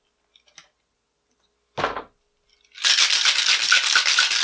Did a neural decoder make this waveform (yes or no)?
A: no